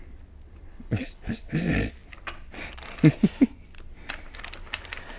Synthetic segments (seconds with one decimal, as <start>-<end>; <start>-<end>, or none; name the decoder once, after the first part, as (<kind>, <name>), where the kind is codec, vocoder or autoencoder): 0.7-1.5 (codec, HILCodec)